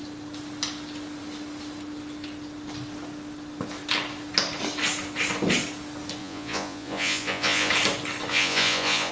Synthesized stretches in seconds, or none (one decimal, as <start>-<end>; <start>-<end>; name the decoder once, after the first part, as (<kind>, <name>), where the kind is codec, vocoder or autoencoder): 6.2-7.7 (vocoder, Vocos); 8.3-9.1